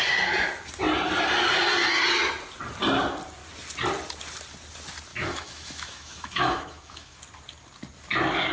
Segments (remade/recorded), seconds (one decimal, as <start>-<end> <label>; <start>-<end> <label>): 0.0-5.1 recorded; 5.1-7.2 remade; 7.2-8.5 recorded